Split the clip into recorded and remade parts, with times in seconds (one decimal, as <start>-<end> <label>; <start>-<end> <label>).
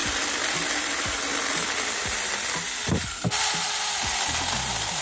0.0-5.0 recorded